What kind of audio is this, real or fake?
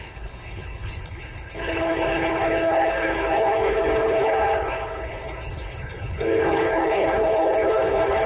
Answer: fake